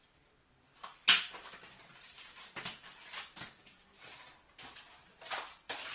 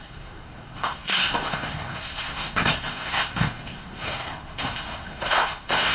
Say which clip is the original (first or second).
first